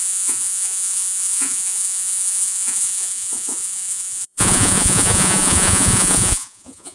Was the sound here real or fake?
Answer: fake